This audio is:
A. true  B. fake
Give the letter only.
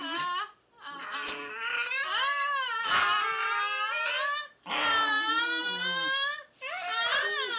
A